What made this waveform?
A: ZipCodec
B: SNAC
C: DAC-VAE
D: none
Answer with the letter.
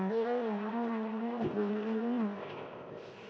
A